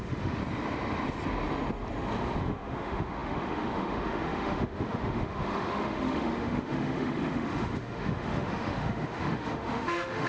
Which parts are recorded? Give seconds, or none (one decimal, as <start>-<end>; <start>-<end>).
0.4-2.4